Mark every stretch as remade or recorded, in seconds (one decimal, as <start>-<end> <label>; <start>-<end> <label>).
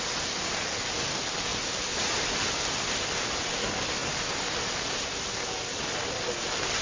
0.0-6.8 recorded